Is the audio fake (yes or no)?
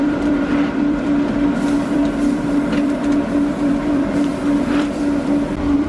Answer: yes